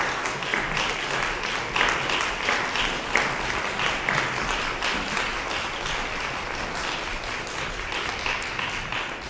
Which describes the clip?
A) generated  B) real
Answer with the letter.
B